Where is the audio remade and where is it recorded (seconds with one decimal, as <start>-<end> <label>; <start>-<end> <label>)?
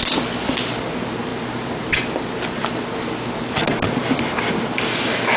0.0-5.4 recorded